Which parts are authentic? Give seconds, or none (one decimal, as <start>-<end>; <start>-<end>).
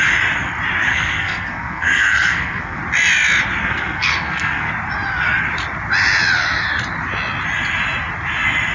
0.0-0.9; 2.8-3.6; 4.7-8.7